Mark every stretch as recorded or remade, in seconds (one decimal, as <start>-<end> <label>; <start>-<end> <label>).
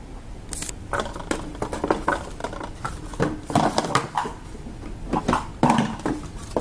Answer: 0.0-1.2 recorded; 1.2-6.6 remade